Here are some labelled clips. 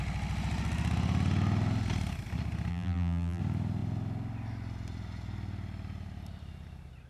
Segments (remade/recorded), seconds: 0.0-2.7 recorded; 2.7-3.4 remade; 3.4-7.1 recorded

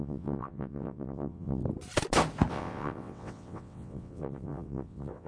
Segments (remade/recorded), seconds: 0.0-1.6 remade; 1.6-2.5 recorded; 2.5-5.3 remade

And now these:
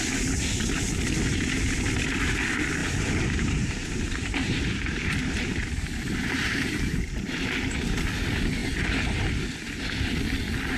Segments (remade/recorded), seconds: 0.0-2.8 recorded; 2.8-7.0 remade; 7.0-10.8 recorded

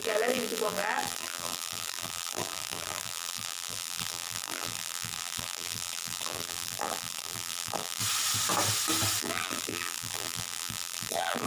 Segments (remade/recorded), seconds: 0.0-8.0 remade; 8.0-9.2 recorded; 9.2-11.5 remade

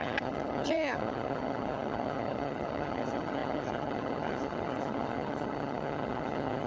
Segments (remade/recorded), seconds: 0.0-6.7 remade

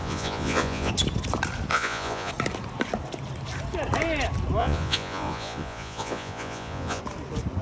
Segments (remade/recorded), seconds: 0.0-0.9 remade; 0.9-1.7 recorded; 1.7-2.3 remade; 2.3-4.6 recorded; 4.6-7.0 remade; 7.0-7.6 recorded